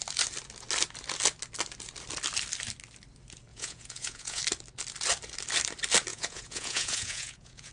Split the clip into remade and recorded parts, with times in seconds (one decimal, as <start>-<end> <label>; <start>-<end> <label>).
0.0-3.5 recorded; 3.5-4.4 remade; 4.4-6.1 recorded; 6.1-7.7 remade